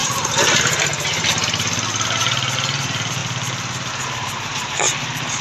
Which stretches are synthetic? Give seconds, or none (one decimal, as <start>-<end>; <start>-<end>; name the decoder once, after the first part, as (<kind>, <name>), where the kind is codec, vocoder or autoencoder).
0.0-0.6 (vocoder, BigVGAN v2)